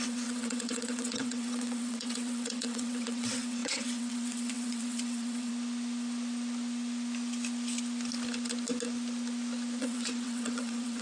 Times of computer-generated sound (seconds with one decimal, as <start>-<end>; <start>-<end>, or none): 0.0-5.5; 9.8-11.0

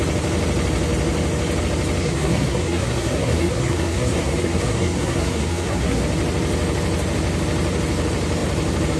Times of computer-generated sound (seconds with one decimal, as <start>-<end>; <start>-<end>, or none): 2.0-6.0

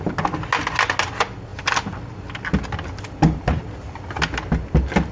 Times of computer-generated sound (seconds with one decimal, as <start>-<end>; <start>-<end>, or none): none

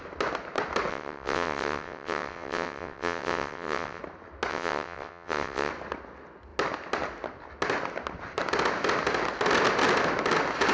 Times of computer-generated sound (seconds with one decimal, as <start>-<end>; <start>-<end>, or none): 0.9-4.0; 4.5-5.7